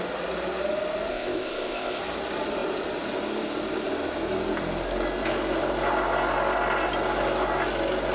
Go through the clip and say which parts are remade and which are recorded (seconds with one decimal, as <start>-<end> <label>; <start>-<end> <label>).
0.0-1.1 recorded; 1.1-2.0 remade; 2.0-8.1 recorded